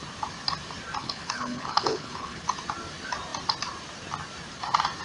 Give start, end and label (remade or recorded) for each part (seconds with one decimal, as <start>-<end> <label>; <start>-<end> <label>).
0.0-1.0 recorded; 1.0-2.4 remade; 2.4-5.0 recorded